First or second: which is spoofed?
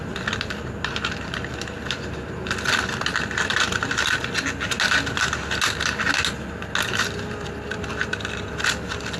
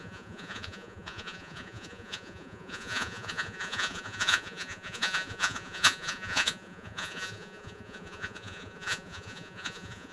second